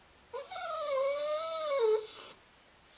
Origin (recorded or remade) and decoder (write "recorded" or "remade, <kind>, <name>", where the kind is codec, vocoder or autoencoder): recorded